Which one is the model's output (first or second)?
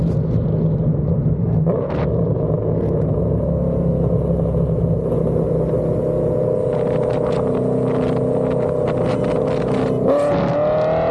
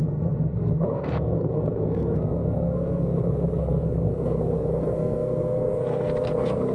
second